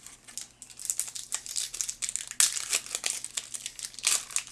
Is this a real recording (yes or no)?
yes